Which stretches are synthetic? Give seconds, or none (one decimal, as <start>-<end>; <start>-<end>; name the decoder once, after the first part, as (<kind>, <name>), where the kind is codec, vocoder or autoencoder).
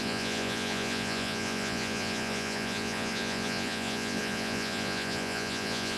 0.0-6.0 (vocoder, Vocos)